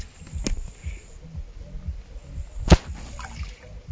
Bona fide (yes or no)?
yes